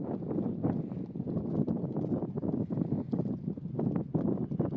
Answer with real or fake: real